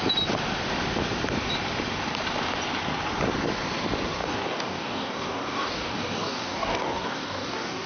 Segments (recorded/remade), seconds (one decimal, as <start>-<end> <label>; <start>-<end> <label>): 0.0-4.2 recorded; 4.2-7.9 remade